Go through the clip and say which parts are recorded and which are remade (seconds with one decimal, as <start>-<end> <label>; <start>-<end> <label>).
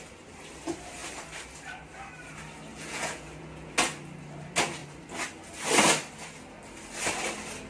0.0-2.7 recorded; 2.7-3.7 remade; 3.7-7.7 recorded